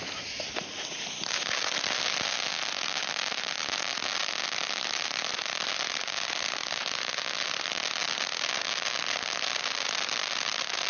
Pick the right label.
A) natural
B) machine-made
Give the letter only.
A